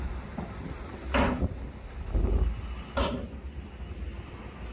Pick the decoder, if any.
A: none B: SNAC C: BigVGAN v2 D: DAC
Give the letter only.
A